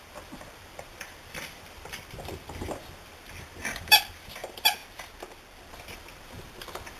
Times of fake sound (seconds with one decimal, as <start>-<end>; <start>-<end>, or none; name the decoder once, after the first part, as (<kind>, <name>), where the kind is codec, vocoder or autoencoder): 0.0-4.8 (vocoder, BigVGAN v2); 5.7-7.0